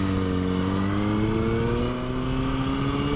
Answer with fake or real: real